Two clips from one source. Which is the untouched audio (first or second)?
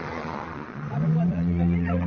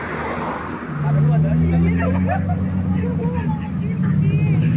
second